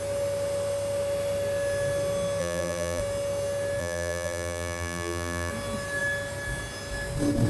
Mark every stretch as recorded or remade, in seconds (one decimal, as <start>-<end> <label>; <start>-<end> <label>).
0.0-2.4 recorded; 2.4-3.0 remade; 3.0-3.8 recorded; 3.8-5.5 remade; 5.5-7.5 recorded